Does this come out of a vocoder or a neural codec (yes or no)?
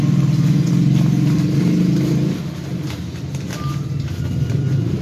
no